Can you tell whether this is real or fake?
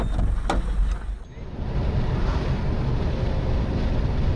real